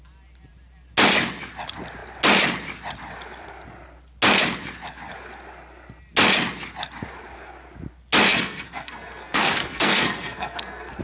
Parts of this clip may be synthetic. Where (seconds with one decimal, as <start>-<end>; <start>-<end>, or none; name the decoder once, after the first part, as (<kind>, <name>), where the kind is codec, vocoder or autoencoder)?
8.3-11.0 (codec, SNAC)